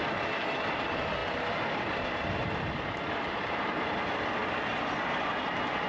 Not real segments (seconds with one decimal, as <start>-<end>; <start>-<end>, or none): none